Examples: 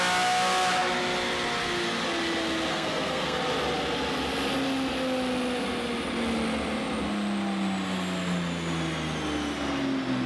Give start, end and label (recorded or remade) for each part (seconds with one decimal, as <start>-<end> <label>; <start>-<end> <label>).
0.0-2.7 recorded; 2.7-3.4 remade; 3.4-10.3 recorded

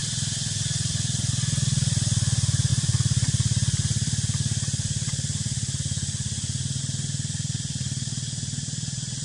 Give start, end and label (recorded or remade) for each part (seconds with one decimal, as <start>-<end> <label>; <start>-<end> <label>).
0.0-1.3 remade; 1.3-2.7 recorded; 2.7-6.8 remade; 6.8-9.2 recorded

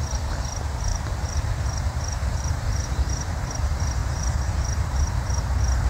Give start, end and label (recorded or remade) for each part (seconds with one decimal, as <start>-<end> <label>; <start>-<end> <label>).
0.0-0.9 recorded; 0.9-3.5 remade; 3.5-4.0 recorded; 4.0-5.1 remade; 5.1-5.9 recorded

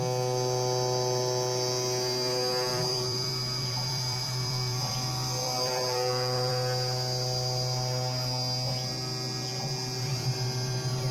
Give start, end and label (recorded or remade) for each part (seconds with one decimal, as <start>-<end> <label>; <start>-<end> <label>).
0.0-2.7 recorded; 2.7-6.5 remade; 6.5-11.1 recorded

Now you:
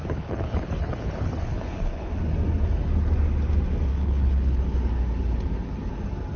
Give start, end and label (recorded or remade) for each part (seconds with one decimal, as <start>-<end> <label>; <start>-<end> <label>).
0.0-2.2 remade; 2.2-3.9 recorded; 3.9-4.6 remade; 4.6-6.4 recorded